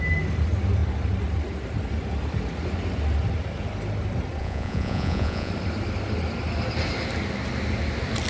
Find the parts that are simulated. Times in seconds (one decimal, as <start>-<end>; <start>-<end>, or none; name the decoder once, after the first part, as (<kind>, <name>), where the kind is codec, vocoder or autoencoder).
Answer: 4.4-5.5 (vocoder, Vocos)